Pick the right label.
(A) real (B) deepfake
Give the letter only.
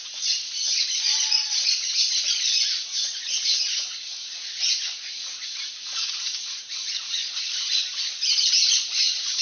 B